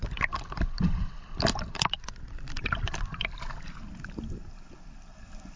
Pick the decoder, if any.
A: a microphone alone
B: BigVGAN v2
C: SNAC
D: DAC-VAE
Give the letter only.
B